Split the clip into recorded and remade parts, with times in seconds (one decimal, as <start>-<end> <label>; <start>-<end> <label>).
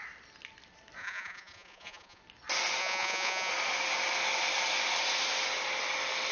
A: 0.0-1.0 recorded; 1.0-2.2 remade; 2.2-2.8 recorded; 2.8-3.5 remade; 3.5-6.3 recorded